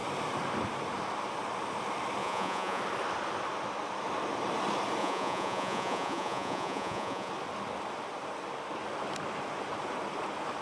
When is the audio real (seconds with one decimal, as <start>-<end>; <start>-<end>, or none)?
0.0-2.2; 2.8-5.0; 7.3-10.6